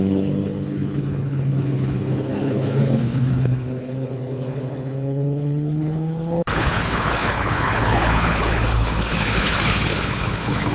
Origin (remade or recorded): remade